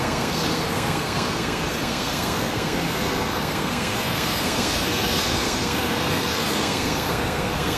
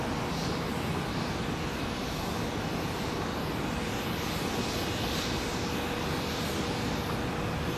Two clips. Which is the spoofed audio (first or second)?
first